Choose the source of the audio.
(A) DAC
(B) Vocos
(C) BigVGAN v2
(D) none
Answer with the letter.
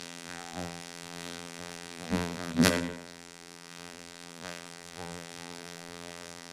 C